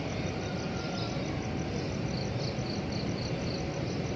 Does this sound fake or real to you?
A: real